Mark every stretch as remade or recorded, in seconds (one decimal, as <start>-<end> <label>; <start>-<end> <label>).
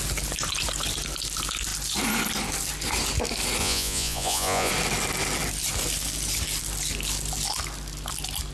0.0-3.6 recorded; 3.6-4.7 remade; 4.7-8.5 recorded